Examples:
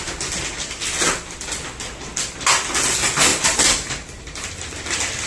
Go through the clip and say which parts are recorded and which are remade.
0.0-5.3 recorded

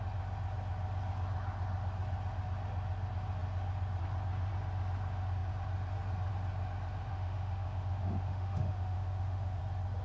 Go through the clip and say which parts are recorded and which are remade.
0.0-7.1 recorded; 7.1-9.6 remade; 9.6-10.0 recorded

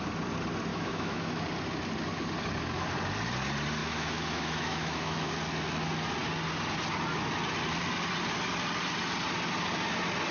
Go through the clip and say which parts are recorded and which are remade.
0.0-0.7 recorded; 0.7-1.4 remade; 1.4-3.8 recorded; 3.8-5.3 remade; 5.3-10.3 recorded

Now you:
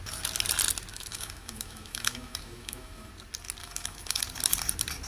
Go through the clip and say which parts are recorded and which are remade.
0.0-0.9 recorded; 0.9-3.1 remade; 3.1-3.6 recorded; 3.6-4.2 remade; 4.2-5.1 recorded

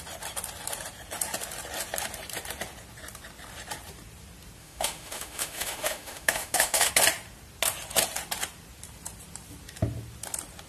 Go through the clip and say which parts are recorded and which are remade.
0.0-4.6 recorded; 4.6-6.9 remade; 6.9-10.7 recorded

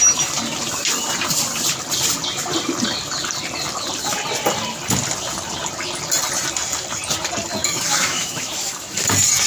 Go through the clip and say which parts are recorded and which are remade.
0.0-7.6 recorded; 7.6-9.0 remade; 9.0-9.5 recorded

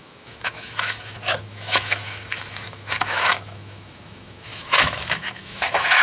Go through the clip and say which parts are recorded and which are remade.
0.0-6.0 remade